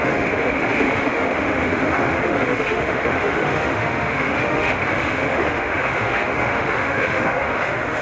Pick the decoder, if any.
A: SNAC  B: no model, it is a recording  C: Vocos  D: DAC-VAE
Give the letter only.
D